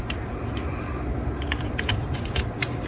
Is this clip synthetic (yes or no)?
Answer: yes